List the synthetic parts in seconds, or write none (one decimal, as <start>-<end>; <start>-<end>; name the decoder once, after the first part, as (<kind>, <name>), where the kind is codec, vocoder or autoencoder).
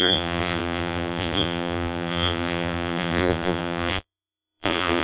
0.0-5.0 (vocoder, BigVGAN v2)